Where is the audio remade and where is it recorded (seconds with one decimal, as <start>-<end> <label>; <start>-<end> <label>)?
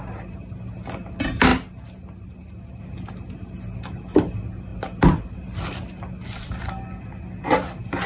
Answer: 0.0-8.1 recorded